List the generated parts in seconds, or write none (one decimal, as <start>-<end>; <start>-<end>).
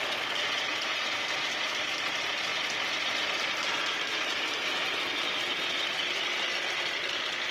none